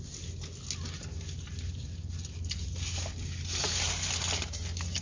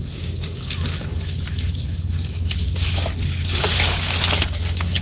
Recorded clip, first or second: first